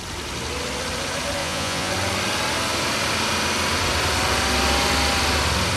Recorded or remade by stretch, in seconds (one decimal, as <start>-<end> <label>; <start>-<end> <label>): 0.0-1.4 recorded; 1.4-1.9 remade; 1.9-5.8 recorded